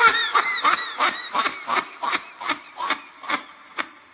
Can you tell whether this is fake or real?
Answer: fake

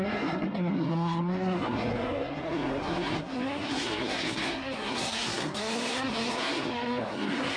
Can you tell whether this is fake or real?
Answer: fake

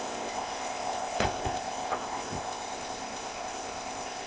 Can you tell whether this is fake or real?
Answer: fake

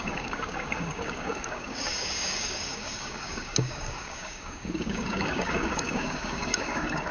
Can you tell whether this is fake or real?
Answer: fake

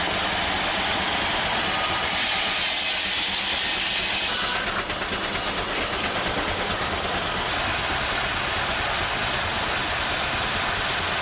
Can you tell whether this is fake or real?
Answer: real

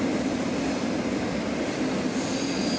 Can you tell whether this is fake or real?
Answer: real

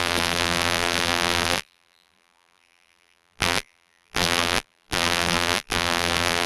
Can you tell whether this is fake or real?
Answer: fake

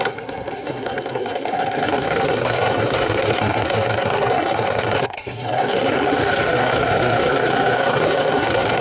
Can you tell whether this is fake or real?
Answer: fake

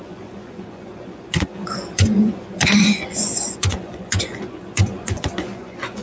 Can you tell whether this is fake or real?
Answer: fake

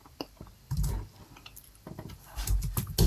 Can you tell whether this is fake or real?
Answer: real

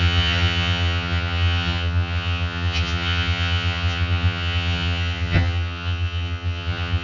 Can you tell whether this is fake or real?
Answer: fake